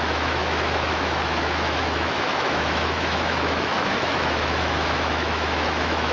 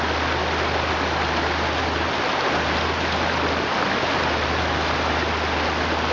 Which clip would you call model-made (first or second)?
first